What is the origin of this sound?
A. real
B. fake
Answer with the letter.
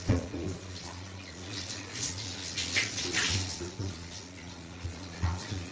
B